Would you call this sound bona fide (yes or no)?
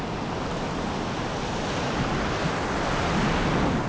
yes